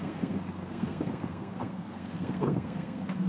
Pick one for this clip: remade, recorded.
remade